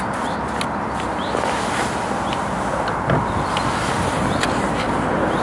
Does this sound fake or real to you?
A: real